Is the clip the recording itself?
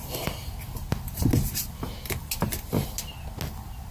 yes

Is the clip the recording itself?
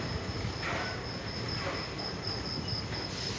yes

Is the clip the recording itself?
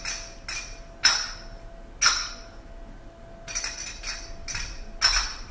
yes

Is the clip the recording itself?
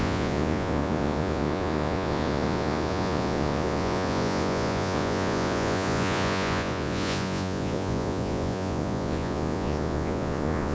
no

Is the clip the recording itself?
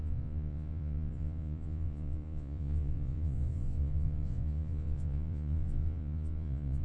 no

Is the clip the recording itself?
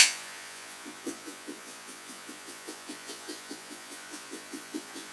no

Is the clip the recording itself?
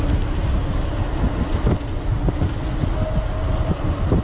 yes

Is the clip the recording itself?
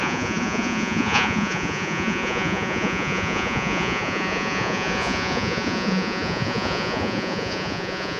no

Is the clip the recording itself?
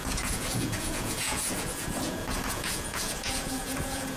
no